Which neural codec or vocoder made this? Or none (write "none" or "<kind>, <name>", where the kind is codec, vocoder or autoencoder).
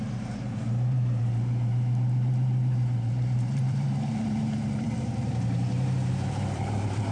vocoder, BigVGAN v2